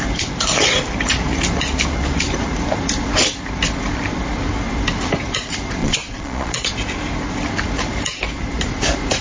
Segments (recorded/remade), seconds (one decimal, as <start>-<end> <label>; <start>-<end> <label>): 0.0-5.8 recorded; 5.8-6.7 remade; 6.7-9.2 recorded